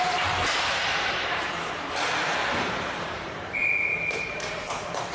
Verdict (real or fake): fake